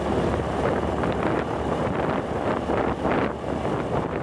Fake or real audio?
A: real